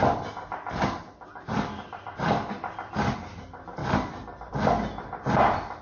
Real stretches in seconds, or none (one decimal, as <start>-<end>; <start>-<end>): 0.0-5.8

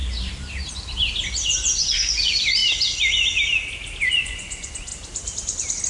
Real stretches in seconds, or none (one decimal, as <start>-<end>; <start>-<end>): 0.0-1.5; 2.6-4.1; 4.9-5.9

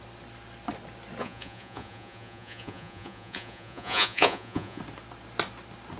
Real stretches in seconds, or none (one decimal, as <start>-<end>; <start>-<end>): 0.0-1.2; 4.8-6.0

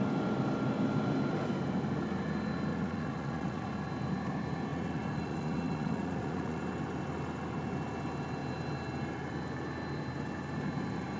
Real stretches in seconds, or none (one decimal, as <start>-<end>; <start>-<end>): 0.0-2.7; 3.7-4.7; 6.6-11.2

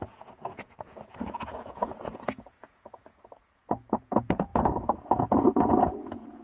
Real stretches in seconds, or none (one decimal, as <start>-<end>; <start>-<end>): none

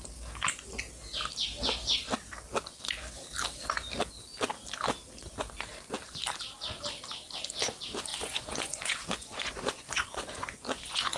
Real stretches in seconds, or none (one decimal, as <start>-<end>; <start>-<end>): 0.0-8.1

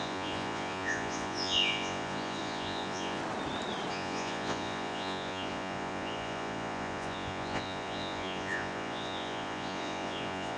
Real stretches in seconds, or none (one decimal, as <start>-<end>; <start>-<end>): 3.2-3.9

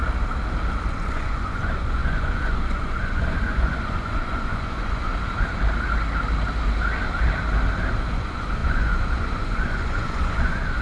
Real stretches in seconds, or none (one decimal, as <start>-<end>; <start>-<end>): 0.0-0.9; 5.1-8.1